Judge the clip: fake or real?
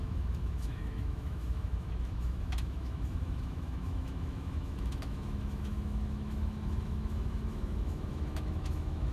fake